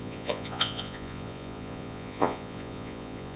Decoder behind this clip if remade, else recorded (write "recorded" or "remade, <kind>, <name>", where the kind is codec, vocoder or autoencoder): remade, vocoder, Vocos